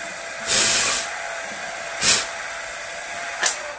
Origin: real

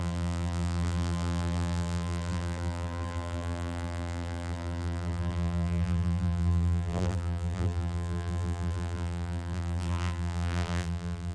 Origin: fake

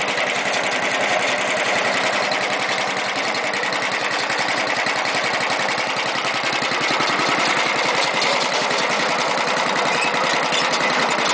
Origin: real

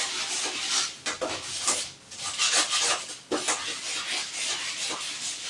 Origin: real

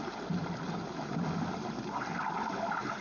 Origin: real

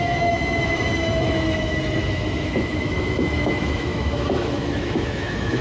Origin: fake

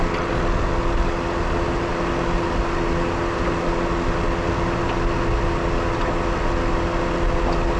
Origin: real